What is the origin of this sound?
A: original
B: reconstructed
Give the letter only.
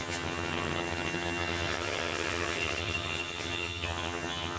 B